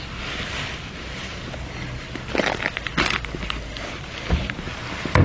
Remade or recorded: recorded